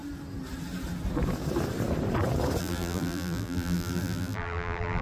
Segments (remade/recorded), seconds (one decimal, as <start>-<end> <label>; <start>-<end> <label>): 0.0-2.6 recorded; 2.6-5.0 remade